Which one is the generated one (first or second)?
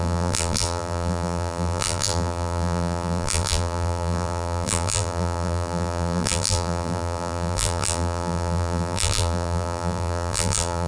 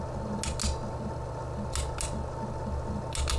first